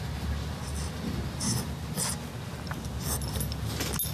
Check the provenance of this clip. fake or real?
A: real